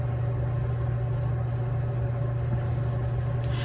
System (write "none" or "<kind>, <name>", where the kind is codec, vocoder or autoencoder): none